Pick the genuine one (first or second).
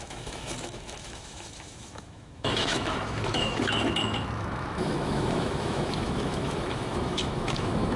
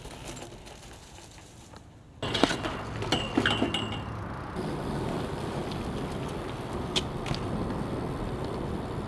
second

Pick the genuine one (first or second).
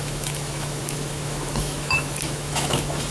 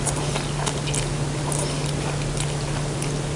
second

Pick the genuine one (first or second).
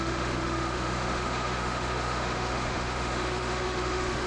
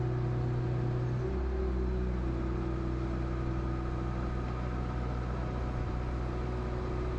second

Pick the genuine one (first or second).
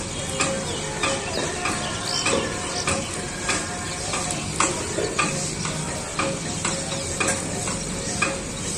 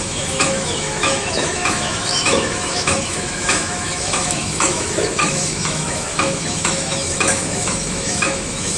first